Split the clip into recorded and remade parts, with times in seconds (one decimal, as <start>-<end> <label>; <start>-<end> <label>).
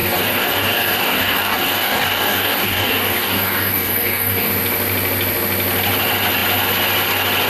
0.0-4.5 remade; 4.5-7.5 recorded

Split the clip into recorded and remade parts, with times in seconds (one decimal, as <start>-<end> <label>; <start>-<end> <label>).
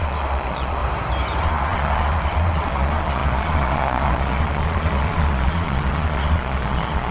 0.0-0.8 remade; 0.8-1.4 recorded; 1.4-7.1 remade